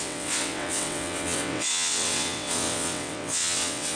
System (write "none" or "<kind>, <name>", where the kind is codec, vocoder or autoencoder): vocoder, WaveNeXt